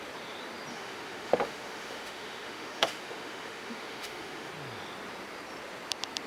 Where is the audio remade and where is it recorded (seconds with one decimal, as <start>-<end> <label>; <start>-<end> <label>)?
0.0-0.7 recorded; 0.7-4.5 remade; 4.5-6.3 recorded